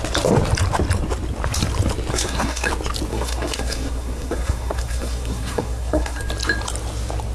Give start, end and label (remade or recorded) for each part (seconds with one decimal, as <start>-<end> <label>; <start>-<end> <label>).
0.0-2.1 recorded; 2.1-2.7 remade; 2.7-3.1 recorded; 3.1-6.2 remade; 6.2-7.3 recorded